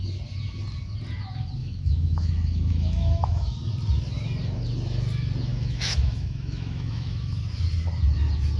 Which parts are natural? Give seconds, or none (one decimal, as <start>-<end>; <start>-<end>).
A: 0.0-1.6; 3.7-5.5; 7.4-8.6